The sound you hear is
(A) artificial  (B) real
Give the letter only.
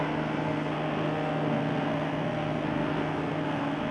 A